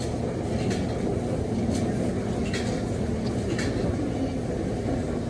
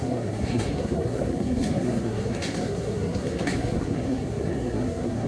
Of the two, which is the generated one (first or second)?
second